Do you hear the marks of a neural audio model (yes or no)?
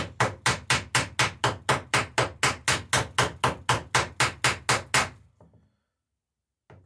no